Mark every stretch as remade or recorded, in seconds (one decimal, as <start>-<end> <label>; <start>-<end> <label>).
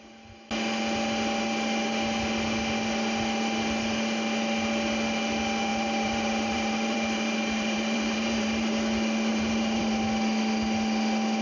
0.0-5.7 recorded; 5.7-8.7 remade; 8.7-9.3 recorded; 9.3-9.9 remade; 9.9-11.4 recorded